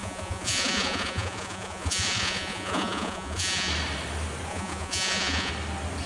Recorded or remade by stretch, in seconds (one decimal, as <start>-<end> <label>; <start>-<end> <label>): 0.0-3.7 remade; 3.7-4.5 recorded; 4.5-5.5 remade; 5.5-6.1 recorded